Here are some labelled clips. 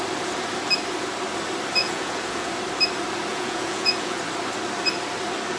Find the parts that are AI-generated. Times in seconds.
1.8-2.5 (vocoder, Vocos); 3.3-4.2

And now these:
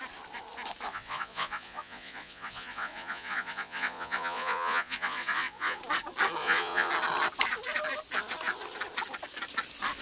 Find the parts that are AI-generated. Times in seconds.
0.9-5.8 (vocoder, Vocos); 6.4-6.9

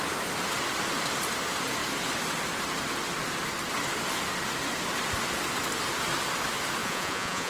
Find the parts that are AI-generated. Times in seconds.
6.8-7.5 (vocoder, Vocos)

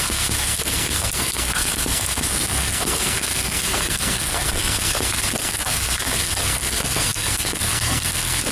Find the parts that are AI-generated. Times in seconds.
0.0-8.5 (codec, SNAC)

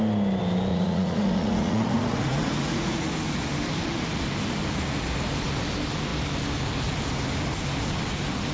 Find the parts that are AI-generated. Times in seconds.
0.7-3.1 (vocoder, Vocos)

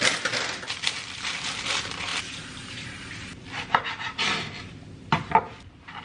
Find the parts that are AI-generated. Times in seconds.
0.0-2.1 (vocoder, BigVGAN v2)